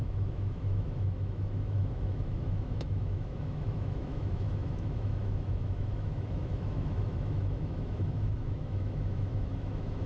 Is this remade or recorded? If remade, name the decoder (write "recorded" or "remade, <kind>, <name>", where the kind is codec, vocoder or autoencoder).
remade, autoencoder, DAC-VAE